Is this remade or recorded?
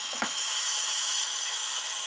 remade